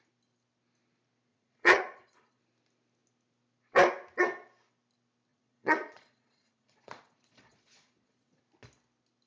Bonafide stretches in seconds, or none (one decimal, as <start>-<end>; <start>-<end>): 0.0-1.3; 2.4-5.3; 8.4-9.3